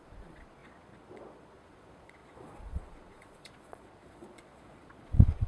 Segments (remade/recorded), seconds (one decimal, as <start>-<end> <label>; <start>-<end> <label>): 0.0-5.5 remade